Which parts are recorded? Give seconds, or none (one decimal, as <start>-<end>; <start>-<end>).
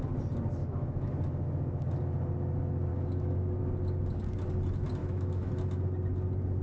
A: 0.0-0.6; 1.1-2.9; 3.6-5.0; 5.5-6.6